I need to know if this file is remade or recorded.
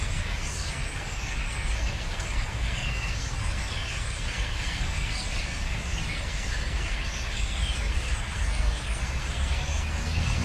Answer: remade